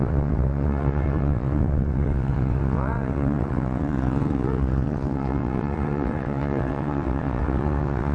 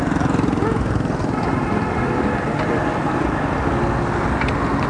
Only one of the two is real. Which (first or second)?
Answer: second